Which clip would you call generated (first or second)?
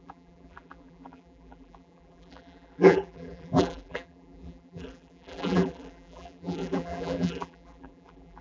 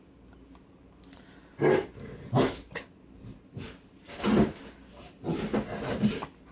first